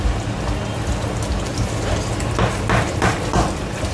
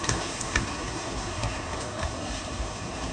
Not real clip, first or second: second